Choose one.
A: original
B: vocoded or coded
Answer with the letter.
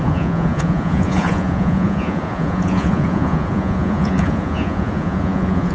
B